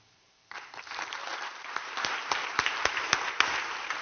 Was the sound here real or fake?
fake